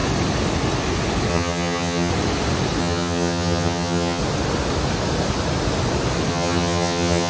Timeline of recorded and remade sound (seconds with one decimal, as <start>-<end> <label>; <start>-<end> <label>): 0.0-1.3 recorded; 1.3-2.1 remade; 2.1-2.8 recorded; 2.8-4.2 remade; 4.2-6.3 recorded; 6.3-7.3 remade